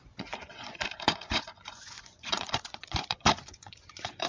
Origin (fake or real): fake